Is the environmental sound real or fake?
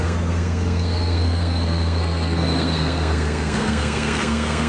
fake